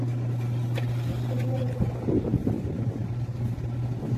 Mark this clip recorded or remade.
recorded